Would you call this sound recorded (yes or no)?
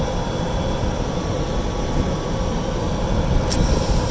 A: yes